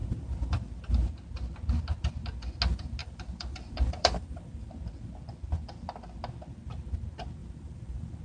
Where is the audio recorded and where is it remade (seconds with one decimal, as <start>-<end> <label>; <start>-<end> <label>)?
0.0-0.9 remade; 0.9-3.0 recorded; 3.0-4.7 remade; 4.7-7.4 recorded; 7.4-8.2 remade

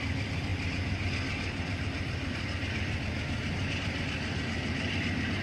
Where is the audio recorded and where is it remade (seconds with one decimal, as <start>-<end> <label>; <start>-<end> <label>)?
0.0-0.5 remade; 0.5-3.7 recorded; 3.7-5.4 remade

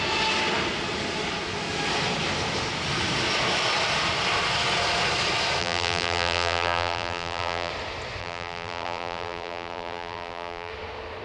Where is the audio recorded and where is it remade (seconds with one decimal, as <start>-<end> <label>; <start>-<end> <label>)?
0.0-5.6 recorded; 5.6-7.7 remade; 7.7-8.2 recorded; 8.2-10.7 remade; 10.7-11.2 recorded